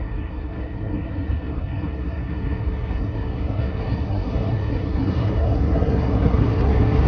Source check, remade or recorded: remade